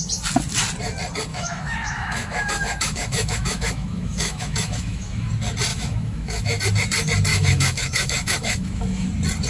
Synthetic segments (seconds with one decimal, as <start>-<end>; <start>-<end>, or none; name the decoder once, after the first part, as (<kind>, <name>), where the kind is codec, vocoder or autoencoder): 1.3-5.3 (autoencoder, DAC-VAE); 5.7-6.6; 7.3-9.1